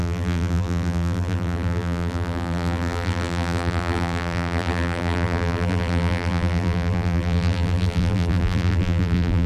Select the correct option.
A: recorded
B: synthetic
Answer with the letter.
B